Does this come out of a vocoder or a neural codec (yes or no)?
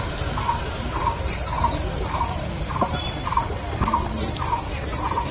yes